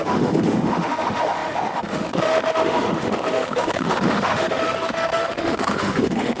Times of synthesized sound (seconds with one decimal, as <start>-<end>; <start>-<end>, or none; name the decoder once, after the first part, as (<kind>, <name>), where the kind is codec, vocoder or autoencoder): 0.0-6.4 (autoencoder, DAC-VAE)